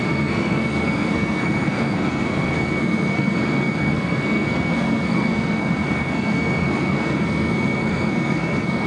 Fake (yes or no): yes